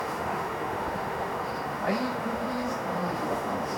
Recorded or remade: remade